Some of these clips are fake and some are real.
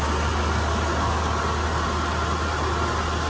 real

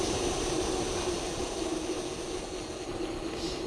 real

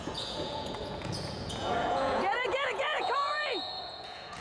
fake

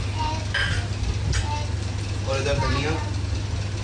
real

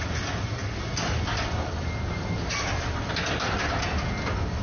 real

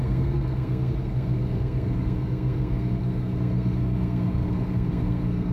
fake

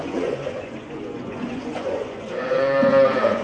fake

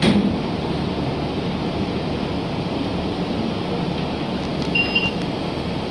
real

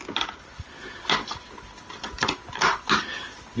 real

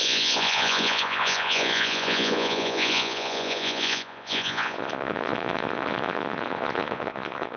fake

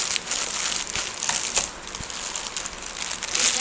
real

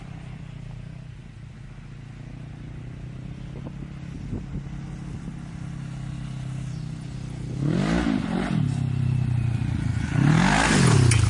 real